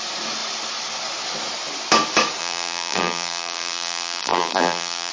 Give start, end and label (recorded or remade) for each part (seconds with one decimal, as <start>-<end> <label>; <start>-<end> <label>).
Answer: 0.0-2.4 recorded; 2.4-5.1 remade